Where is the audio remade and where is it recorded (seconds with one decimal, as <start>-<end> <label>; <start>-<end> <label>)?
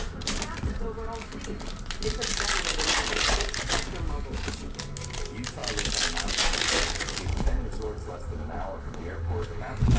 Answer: 0.0-7.3 recorded; 7.3-9.6 remade; 9.6-10.0 recorded